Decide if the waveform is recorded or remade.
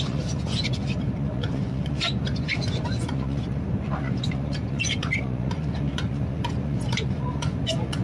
remade